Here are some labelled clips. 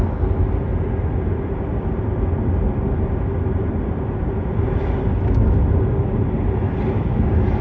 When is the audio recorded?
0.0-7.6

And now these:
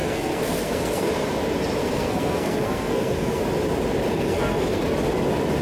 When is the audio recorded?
1.1-1.8; 3.4-4.1; 4.8-5.6

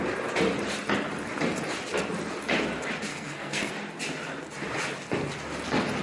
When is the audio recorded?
0.0-3.1; 3.7-6.0

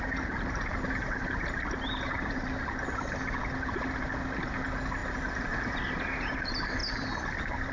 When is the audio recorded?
0.0-7.7

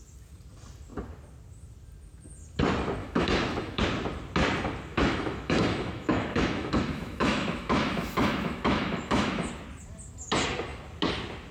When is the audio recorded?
0.0-3.0; 3.8-4.9; 9.5-11.5